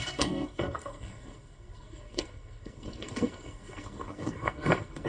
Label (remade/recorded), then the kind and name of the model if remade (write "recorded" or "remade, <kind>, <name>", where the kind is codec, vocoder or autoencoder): remade, codec, SNAC